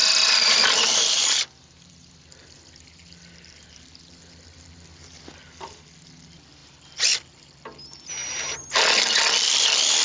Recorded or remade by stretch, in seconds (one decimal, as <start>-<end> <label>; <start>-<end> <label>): 0.0-2.1 remade; 2.1-10.0 recorded